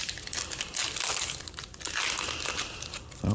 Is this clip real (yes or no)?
yes